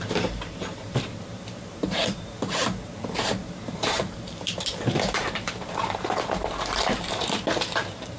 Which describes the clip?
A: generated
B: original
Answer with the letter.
A